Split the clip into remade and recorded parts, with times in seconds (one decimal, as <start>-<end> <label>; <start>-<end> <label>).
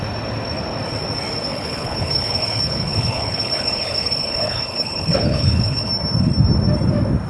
0.0-1.5 recorded; 1.5-5.9 remade; 5.9-7.3 recorded